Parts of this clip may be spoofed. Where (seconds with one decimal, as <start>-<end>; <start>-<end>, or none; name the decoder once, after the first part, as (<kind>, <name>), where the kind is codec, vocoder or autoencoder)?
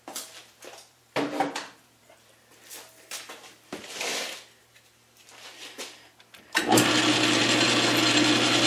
0.4-3.2 (vocoder, BigVGAN v2); 6.6-7.4